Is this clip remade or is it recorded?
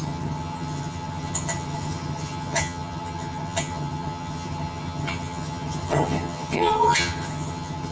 remade